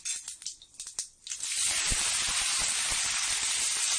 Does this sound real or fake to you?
real